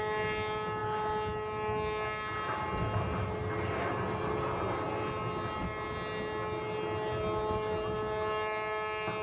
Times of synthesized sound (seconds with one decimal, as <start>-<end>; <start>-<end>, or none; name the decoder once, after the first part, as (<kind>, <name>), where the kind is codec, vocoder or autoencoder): none